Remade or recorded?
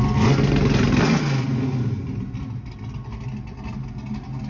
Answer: recorded